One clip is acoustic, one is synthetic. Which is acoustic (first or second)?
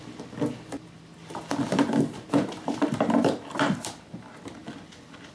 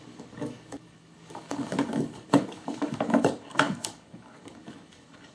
first